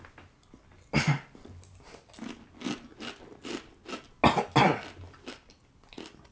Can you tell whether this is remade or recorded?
recorded